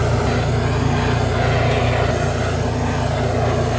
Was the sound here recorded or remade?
recorded